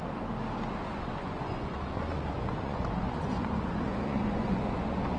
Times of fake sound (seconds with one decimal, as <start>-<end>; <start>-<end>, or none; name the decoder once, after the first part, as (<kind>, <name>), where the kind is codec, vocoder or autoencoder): 0.8-5.2 (vocoder, Vocos)

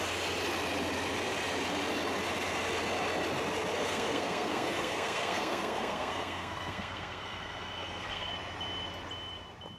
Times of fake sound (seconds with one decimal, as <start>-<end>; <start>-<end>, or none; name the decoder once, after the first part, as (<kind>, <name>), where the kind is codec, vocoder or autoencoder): 3.8-8.3 (codec, SNAC)

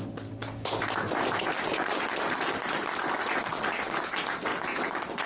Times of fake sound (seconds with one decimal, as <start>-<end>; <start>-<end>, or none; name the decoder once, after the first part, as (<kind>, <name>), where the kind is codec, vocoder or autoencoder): 0.4-3.6 (vocoder, BigVGAN v2); 4.5-5.3

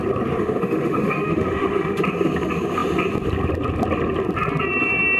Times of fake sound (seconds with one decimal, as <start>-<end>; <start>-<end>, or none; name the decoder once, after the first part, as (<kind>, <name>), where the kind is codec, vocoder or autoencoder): 0.4-2.0 (autoencoder, DAC-VAE)

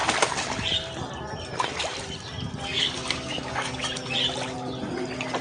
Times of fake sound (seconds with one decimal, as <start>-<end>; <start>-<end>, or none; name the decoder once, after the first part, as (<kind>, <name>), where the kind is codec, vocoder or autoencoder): 2.7-3.8 (codec, DAC)

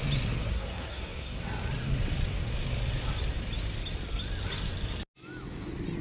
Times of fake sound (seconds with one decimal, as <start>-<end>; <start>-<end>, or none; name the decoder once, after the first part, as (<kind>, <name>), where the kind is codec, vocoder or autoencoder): 0.5-1.4 (codec, SNAC)

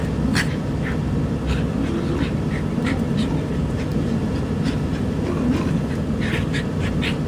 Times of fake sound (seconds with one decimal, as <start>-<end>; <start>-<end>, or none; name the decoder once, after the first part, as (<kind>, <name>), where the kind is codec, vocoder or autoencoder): 3.9-5.3 (vocoder, BigVGAN v2)

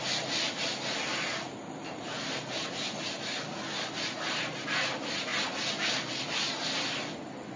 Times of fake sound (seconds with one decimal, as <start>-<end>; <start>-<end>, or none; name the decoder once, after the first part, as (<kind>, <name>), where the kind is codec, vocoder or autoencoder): none